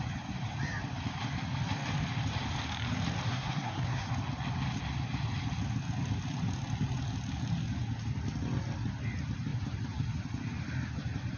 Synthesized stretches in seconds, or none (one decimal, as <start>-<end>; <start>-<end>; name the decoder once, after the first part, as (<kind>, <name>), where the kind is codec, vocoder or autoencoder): 3.3-4.1 (codec, SNAC)